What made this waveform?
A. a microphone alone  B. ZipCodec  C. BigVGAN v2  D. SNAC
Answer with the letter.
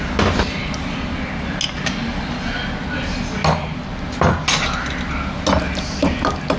A